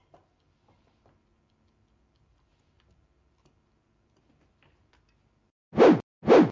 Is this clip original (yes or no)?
yes